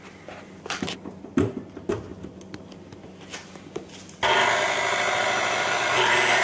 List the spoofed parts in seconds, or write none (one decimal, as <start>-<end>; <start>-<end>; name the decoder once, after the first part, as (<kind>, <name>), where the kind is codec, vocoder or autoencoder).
none